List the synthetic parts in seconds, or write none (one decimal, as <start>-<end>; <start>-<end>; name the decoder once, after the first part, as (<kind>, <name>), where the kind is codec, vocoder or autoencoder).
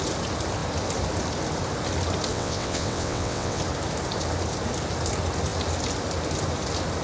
2.3-3.6 (vocoder, WaveNeXt)